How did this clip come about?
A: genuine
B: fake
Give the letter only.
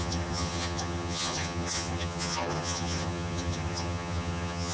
B